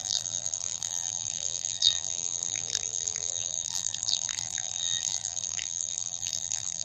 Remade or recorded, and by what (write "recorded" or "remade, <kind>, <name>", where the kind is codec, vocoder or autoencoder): remade, vocoder, BigVGAN v2